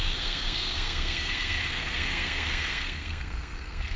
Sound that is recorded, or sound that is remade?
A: remade